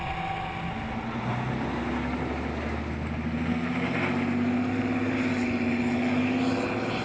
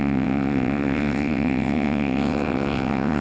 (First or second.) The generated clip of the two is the second